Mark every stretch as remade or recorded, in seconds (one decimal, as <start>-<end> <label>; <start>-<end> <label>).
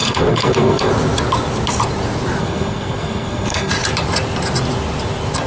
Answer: 0.0-0.9 remade; 0.9-2.4 recorded; 2.4-3.7 remade; 3.7-5.5 recorded